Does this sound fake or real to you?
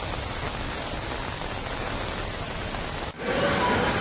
real